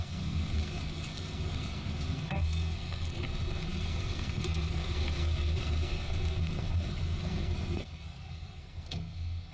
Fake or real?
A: fake